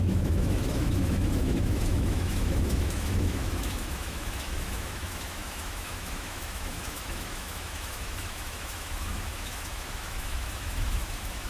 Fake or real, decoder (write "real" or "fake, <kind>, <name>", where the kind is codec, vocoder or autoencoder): fake, autoencoder, DAC-VAE